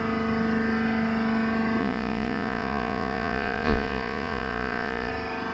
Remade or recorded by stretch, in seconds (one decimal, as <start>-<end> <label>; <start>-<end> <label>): 0.0-1.8 recorded; 1.8-5.1 remade; 5.1-5.5 recorded